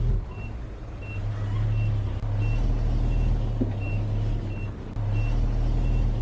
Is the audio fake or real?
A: real